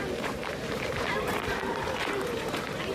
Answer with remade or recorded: remade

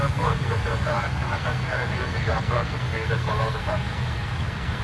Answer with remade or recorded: remade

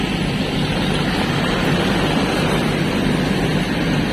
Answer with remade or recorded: remade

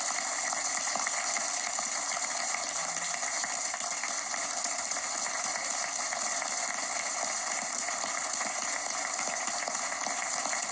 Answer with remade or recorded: recorded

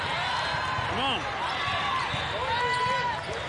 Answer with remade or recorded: recorded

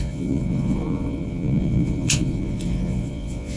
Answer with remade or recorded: remade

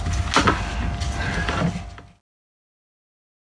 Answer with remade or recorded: recorded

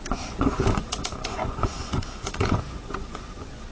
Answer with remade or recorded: remade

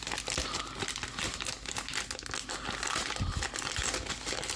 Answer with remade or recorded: recorded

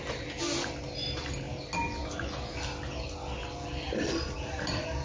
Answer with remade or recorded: recorded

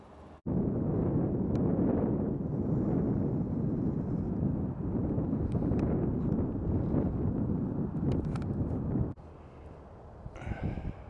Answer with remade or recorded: recorded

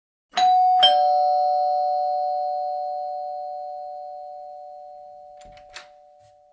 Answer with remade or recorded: recorded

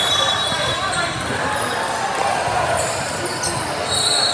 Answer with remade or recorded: recorded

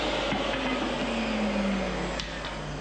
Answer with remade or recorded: recorded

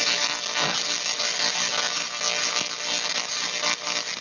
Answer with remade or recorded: recorded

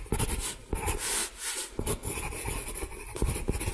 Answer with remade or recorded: recorded